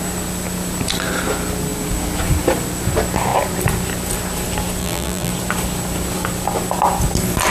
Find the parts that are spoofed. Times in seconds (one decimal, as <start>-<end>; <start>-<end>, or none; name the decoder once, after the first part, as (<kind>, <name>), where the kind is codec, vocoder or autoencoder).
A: 4.8-5.3 (vocoder, BigVGAN v2)